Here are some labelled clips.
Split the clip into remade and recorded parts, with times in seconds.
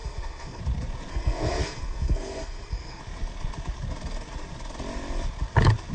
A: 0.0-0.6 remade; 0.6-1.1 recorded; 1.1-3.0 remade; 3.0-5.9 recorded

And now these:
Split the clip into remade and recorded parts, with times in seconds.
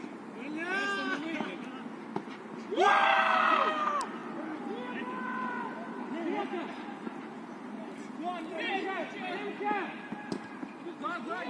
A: 0.0-3.1 recorded; 3.1-3.8 remade; 3.8-11.5 recorded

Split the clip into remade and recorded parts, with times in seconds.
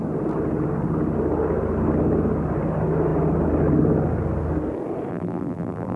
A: 0.0-5.1 recorded; 5.1-6.0 remade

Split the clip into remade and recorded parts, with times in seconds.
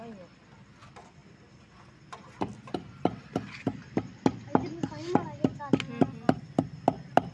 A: 0.0-7.3 recorded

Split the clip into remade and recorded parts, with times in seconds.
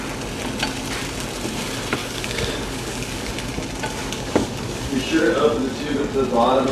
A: 0.0-2.0 recorded; 2.0-3.3 remade; 3.3-4.0 recorded; 4.0-4.9 remade; 4.9-6.7 recorded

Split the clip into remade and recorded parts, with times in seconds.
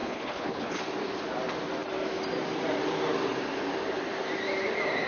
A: 0.0-0.8 remade; 0.8-5.1 recorded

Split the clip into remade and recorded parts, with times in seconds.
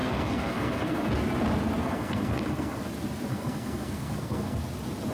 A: 0.0-1.1 remade; 1.1-1.8 recorded; 1.8-2.8 remade; 2.8-3.3 recorded; 3.3-4.6 remade; 4.6-5.1 recorded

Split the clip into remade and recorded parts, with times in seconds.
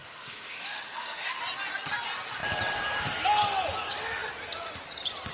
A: 0.0-1.4 remade; 1.4-5.3 recorded